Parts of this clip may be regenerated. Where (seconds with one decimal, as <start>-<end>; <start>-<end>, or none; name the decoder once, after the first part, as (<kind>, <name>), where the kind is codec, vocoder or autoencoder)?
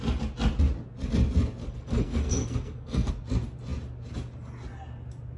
1.6-3.1 (codec, SNAC)